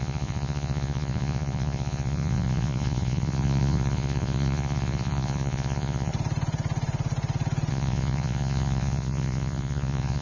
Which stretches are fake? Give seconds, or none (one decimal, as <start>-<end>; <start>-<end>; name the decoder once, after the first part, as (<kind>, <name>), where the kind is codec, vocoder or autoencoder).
0.0-6.1 (vocoder, Vocos); 7.7-10.2